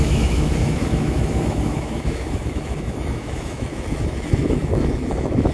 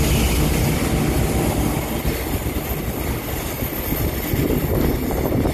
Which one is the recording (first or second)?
second